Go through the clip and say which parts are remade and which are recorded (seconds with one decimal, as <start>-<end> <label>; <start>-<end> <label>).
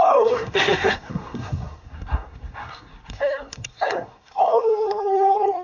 0.0-5.6 remade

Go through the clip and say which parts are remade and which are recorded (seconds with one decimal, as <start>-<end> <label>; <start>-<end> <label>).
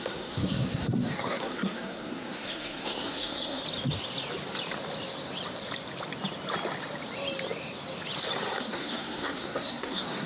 0.0-3.6 remade; 3.6-8.6 recorded; 8.6-10.3 remade